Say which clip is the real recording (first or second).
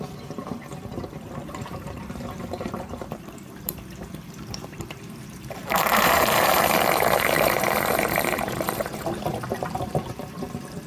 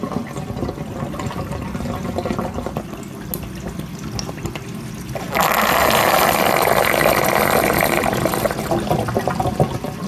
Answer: second